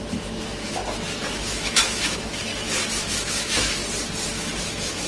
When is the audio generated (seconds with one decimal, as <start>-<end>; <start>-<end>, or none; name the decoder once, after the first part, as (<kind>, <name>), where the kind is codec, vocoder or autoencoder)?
0.0-0.8 (autoencoder, DAC-VAE); 1.4-2.5; 3.1-3.8; 4.3-5.1